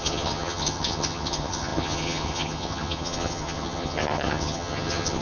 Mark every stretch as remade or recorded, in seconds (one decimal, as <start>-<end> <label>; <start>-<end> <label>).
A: 0.0-5.2 remade